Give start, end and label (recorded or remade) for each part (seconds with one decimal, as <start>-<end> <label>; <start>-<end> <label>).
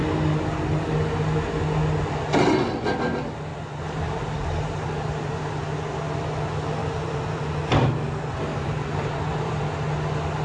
0.0-3.5 recorded; 3.5-5.4 remade; 5.4-6.8 recorded; 6.8-7.5 remade; 7.5-8.5 recorded; 8.5-9.6 remade; 9.6-10.4 recorded